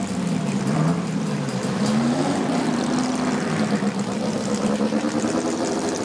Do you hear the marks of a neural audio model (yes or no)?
yes